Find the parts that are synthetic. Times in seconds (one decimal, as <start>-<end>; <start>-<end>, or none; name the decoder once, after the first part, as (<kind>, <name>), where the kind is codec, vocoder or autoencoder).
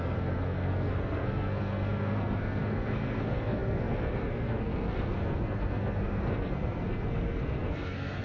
0.0-8.2 (codec, SNAC)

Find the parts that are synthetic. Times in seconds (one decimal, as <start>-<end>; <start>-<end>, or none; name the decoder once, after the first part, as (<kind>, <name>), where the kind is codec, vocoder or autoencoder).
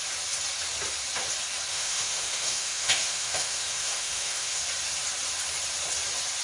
1.7-4.6 (autoencoder, DAC-VAE)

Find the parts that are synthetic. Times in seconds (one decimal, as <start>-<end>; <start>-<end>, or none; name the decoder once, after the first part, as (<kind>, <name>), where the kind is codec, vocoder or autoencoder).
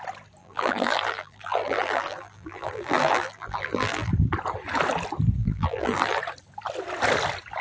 0.4-4.1 (vocoder, BigVGAN v2); 5.4-6.2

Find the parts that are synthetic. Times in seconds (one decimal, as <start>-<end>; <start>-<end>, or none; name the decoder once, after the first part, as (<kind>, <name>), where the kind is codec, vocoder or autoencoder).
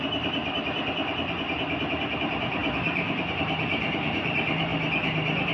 0.0-0.4 (vocoder, BigVGAN v2); 2.2-4.7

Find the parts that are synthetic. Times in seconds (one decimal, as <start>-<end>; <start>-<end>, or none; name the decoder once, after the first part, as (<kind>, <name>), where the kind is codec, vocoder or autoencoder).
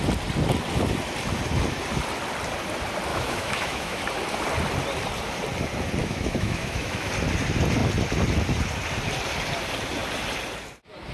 3.1-4.0 (autoencoder, DAC-VAE); 6.0-7.1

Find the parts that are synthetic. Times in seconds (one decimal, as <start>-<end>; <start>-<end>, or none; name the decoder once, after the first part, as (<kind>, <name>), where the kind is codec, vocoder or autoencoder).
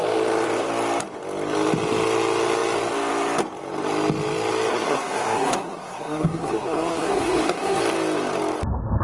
4.7-7.8 (codec, SNAC)